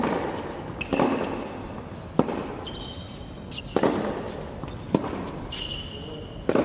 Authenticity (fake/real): real